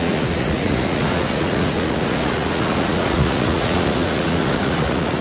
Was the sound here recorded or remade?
remade